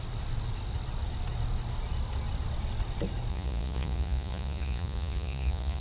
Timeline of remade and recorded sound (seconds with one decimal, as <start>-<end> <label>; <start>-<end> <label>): 0.0-3.3 recorded; 3.3-5.8 remade